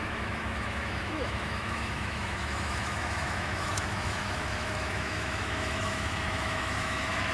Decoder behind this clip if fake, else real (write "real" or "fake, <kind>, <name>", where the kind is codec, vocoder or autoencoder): fake, autoencoder, DAC-VAE